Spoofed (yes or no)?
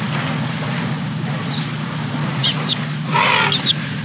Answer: no